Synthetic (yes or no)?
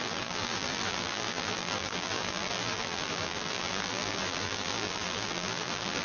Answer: yes